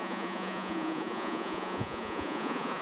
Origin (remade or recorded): remade